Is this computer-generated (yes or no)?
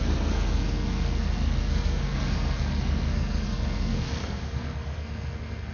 yes